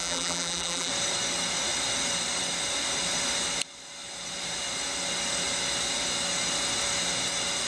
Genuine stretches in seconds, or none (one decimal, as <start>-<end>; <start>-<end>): 0.9-7.7